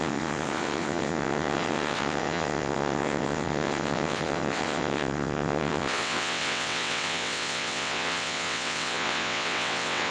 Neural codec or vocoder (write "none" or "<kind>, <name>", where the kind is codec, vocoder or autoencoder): vocoder, WaveNeXt